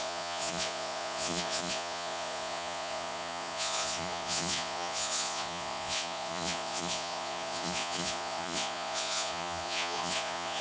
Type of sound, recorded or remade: remade